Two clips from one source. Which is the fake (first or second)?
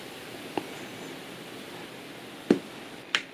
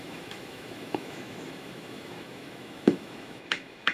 second